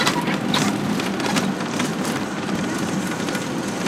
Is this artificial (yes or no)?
yes